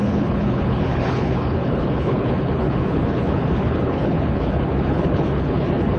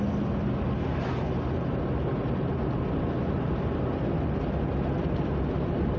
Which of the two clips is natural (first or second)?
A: second